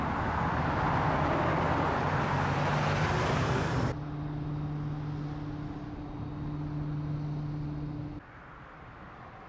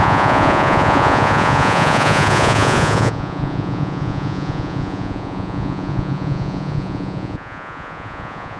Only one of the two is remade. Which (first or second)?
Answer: second